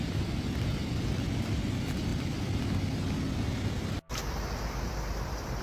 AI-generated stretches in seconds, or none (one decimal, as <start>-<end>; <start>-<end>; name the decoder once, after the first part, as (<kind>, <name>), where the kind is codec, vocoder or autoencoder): none